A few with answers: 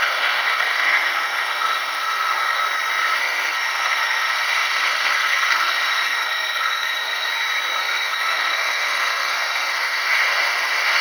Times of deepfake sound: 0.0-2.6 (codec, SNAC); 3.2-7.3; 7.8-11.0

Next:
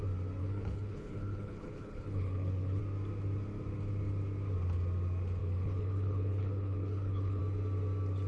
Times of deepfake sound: 0.4-2.8 (codec, HILCodec); 5.4-7.4

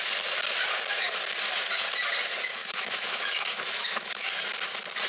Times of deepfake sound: 2.6-4.3 (autoencoder, DAC-VAE)

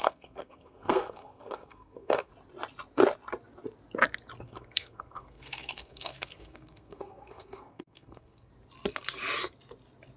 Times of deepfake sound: 0.0-2.3 (codec, SNAC); 4.4-8.5

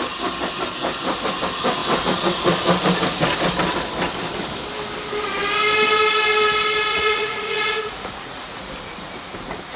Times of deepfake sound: 6.9-8.7 (vocoder, Vocos)

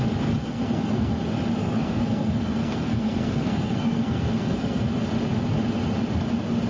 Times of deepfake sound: 0.4-1.2 (codec, SNAC); 1.6-4.8

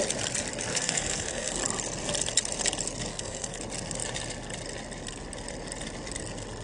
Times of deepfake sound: 0.7-1.6 (codec, SNAC); 3.1-3.6

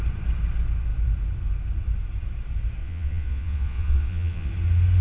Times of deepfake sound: 2.8-4.5 (vocoder, Vocos)